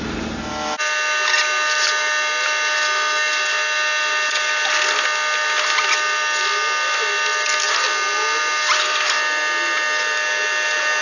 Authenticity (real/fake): real